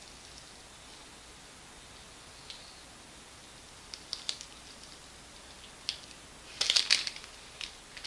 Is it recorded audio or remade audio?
recorded